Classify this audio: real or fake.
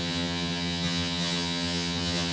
fake